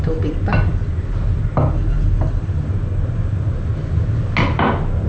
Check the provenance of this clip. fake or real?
real